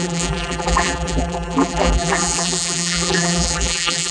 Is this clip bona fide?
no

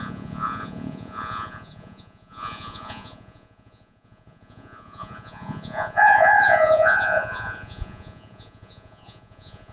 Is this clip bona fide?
no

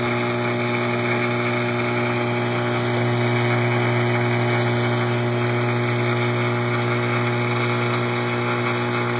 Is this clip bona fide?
yes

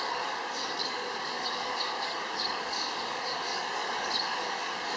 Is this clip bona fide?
no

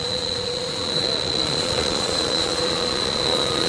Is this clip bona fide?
no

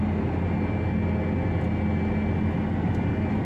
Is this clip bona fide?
yes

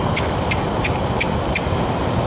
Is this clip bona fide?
yes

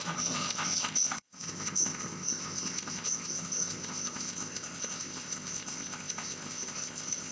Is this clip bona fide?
no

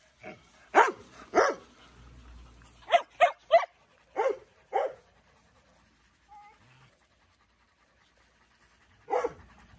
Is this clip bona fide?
yes